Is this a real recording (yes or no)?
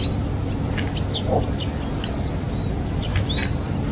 yes